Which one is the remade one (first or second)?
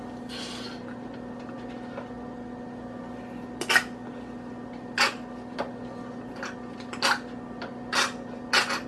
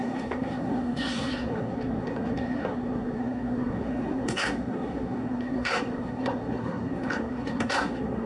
second